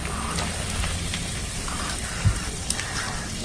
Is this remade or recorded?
recorded